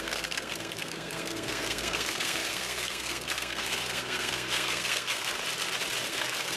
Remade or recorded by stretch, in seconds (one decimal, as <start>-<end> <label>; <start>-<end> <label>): 0.0-5.4 remade; 5.4-6.1 recorded; 6.1-6.6 remade